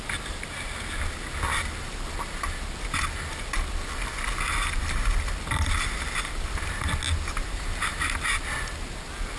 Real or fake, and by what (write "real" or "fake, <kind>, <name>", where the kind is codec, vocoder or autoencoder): real